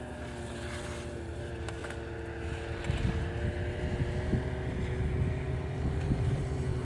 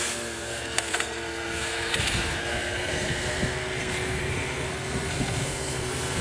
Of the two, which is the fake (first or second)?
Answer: second